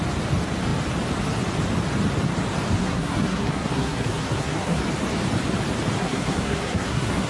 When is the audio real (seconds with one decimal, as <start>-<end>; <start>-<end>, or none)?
0.0-2.8; 4.8-6.0